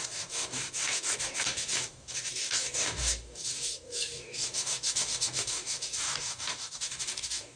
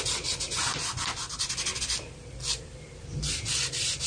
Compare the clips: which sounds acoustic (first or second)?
second